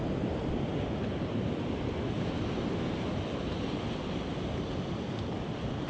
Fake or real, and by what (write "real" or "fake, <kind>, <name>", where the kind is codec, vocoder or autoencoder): real